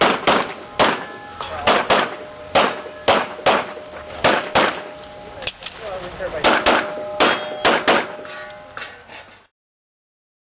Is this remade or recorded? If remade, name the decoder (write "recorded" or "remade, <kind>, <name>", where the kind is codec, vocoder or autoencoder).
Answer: recorded